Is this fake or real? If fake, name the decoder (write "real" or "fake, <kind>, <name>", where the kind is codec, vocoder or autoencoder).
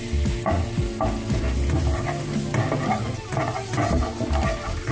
real